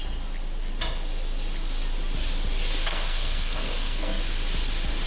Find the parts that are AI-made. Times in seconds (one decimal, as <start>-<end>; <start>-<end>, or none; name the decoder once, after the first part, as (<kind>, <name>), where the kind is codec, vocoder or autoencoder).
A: 2.9-4.2 (codec, SNAC)